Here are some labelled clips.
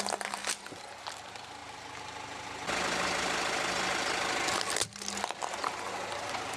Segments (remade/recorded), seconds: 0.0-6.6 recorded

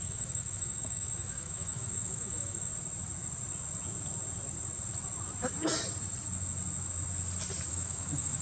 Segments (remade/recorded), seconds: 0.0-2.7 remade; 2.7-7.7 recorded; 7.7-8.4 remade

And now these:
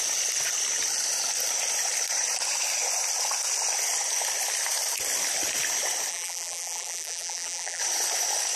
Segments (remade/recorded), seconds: 0.0-6.1 recorded; 6.1-7.8 remade; 7.8-8.6 recorded

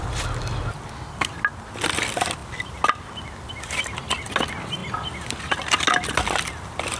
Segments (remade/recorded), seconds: 0.0-7.0 recorded

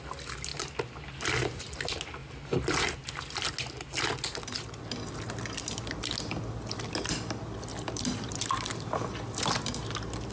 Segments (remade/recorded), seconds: 0.0-7.7 recorded; 7.7-9.5 remade; 9.5-10.3 recorded

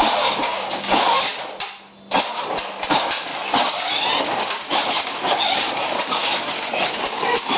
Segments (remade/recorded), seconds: 0.0-1.3 remade; 1.3-2.9 recorded; 2.9-3.3 remade; 3.3-4.2 recorded; 4.2-7.6 remade